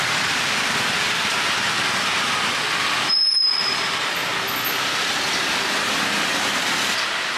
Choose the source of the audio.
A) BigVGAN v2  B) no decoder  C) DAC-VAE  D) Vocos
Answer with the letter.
B